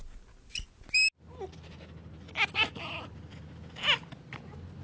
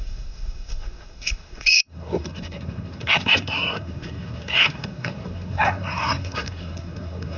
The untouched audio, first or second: first